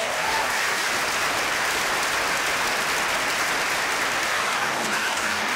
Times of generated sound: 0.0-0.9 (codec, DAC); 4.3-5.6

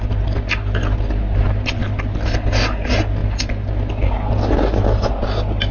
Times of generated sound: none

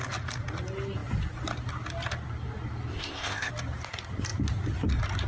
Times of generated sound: 2.9-3.5 (codec, ZipCodec)